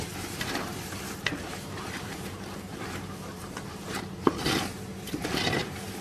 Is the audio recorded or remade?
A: remade